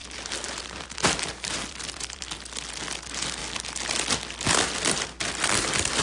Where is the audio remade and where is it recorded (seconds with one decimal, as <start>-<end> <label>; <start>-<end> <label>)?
0.0-2.2 remade; 2.2-6.0 recorded